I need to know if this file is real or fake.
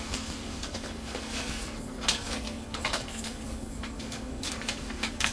fake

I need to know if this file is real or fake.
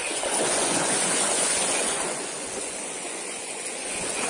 fake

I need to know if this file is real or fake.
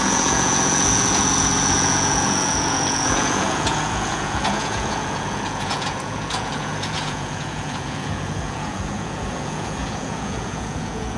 fake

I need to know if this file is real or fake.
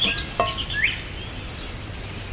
real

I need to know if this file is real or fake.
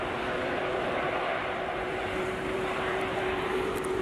fake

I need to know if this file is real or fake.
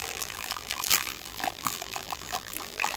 fake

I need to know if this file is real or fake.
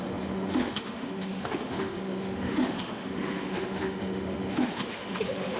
fake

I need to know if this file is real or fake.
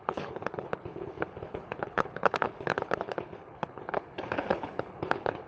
fake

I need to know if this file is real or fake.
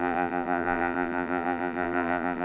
fake